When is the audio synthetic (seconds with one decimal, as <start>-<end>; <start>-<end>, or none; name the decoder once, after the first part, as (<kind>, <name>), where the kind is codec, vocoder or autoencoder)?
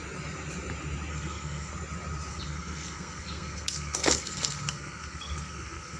1.1-1.7 (codec, SNAC); 2.3-6.0